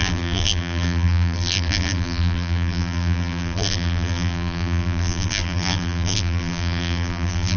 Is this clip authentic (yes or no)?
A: no